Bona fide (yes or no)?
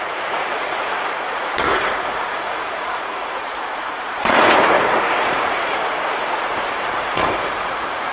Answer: no